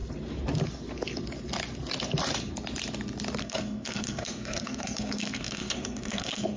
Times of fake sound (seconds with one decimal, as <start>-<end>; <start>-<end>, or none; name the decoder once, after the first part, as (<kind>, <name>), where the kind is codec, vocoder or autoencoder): 3.4-6.6 (codec, SNAC)